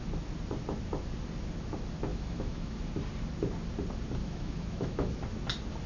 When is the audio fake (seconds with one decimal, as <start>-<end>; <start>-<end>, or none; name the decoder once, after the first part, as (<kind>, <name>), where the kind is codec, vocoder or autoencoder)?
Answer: 2.1-2.8 (autoencoder, DAC-VAE); 4.2-5.1